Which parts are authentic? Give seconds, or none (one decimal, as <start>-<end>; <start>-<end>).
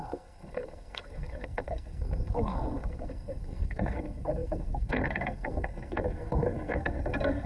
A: none